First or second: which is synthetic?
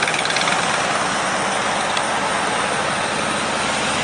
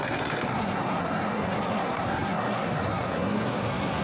second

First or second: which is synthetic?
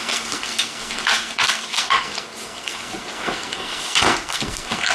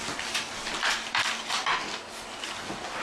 first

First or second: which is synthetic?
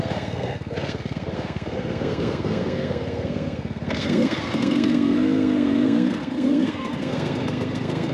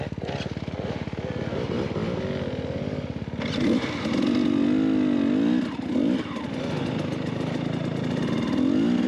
first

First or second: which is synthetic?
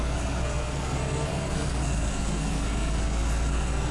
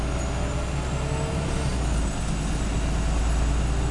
first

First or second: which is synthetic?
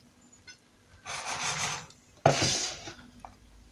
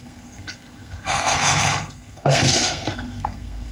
second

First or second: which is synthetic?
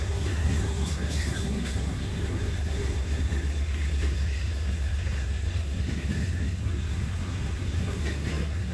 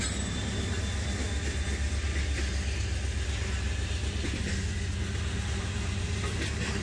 first